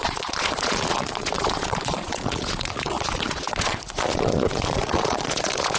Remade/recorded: remade